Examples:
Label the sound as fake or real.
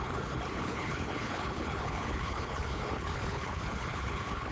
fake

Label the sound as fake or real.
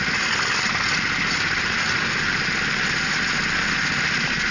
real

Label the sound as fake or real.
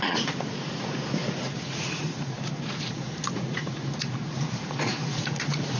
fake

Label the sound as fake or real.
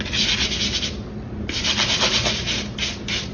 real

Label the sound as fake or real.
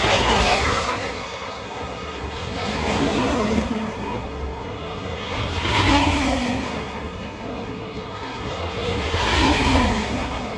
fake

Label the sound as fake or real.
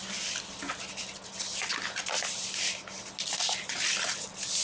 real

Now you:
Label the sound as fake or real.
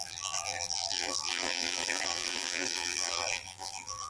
fake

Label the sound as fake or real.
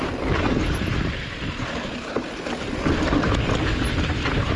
real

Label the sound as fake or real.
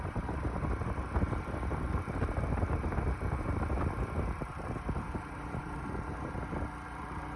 real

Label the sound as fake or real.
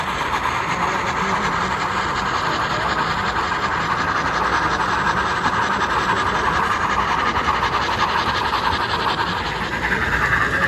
real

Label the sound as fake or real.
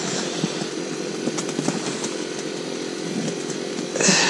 real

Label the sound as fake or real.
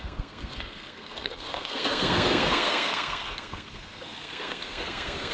fake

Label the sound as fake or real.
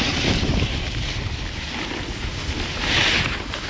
real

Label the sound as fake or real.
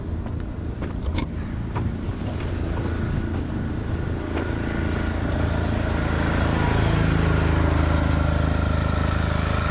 real